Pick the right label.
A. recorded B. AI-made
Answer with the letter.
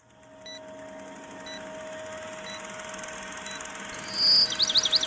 A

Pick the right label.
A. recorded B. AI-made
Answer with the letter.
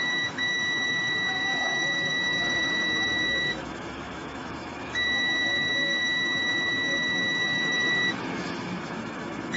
B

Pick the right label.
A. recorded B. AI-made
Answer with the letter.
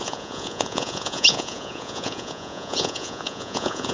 B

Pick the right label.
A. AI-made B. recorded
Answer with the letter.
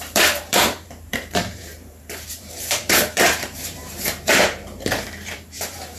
A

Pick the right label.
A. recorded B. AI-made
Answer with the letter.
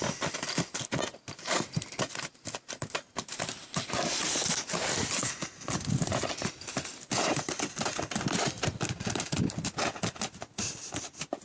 A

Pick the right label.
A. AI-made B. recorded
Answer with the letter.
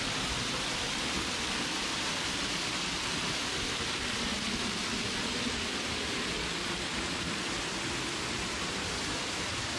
A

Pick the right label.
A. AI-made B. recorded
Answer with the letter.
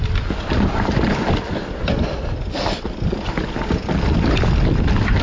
B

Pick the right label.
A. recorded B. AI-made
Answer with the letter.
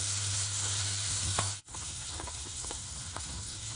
B